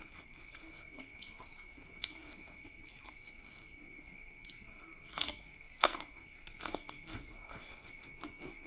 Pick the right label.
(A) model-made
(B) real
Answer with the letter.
A